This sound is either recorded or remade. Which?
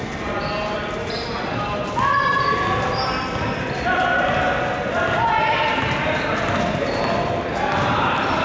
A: recorded